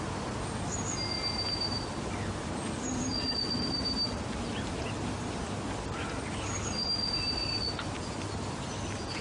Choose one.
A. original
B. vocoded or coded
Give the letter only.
A